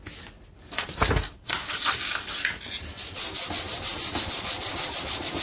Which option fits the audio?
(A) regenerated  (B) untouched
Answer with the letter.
B